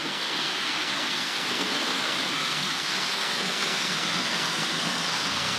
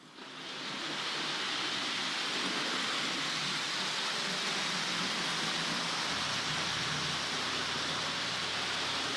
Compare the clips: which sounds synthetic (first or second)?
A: first